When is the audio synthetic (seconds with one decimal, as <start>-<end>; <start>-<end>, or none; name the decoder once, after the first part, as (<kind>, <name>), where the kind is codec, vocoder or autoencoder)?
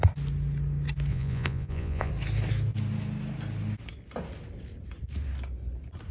1.1-2.1 (vocoder, Vocos)